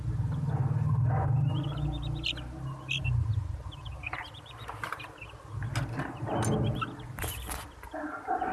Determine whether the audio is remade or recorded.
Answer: recorded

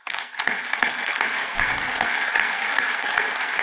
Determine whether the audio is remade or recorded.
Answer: remade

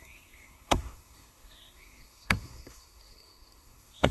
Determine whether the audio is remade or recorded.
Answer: remade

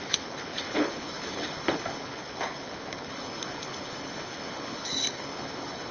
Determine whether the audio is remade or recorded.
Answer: remade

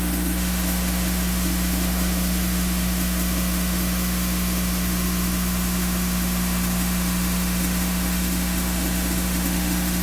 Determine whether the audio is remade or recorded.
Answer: remade